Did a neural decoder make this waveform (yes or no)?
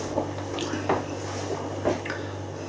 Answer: no